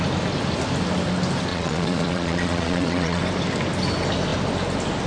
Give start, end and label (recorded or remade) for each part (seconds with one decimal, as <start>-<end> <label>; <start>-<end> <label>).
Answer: 0.0-1.5 recorded; 1.5-3.2 remade; 3.2-5.1 recorded